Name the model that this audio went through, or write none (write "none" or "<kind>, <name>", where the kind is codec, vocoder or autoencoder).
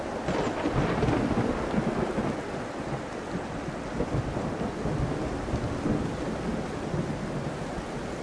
none